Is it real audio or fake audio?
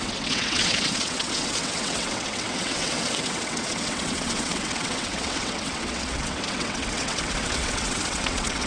fake